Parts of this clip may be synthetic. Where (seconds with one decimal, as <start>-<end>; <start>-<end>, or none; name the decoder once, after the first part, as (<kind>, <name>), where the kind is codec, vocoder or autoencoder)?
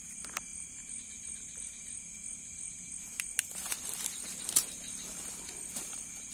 none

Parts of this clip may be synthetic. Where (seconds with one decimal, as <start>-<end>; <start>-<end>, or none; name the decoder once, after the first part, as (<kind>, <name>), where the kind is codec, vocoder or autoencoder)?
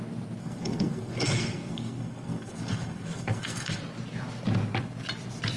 0.4-3.8 (codec, SNAC)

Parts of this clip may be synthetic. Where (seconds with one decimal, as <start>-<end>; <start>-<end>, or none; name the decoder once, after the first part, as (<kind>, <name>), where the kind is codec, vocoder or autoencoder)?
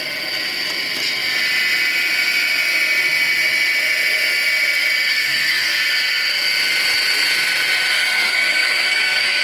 5.1-5.8 (codec, SNAC); 7.9-9.4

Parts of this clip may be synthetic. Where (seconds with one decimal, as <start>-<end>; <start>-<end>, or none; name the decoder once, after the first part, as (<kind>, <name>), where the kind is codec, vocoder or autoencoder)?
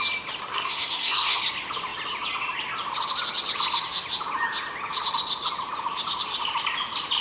0.5-1.4 (codec, SNAC)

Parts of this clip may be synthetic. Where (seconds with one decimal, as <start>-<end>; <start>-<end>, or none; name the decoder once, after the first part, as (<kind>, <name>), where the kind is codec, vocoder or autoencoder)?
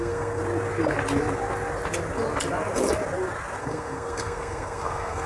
0.0-0.4 (codec, SNAC); 3.6-5.3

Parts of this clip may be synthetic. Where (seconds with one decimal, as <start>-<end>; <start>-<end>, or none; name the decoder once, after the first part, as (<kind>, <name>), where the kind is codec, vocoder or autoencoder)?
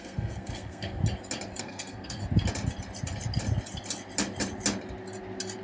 0.0-1.0 (codec, SNAC); 1.6-2.2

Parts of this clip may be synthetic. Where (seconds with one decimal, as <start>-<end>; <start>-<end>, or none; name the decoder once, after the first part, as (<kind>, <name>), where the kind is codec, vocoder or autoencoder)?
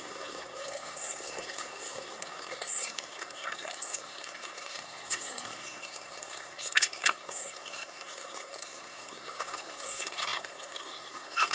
0.0-11.5 (codec, SNAC)